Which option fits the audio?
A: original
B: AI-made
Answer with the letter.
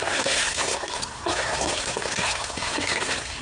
B